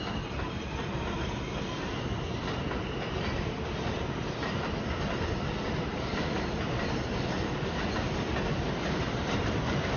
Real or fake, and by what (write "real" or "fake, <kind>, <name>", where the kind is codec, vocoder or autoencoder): real